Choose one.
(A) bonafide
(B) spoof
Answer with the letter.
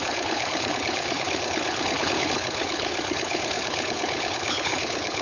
B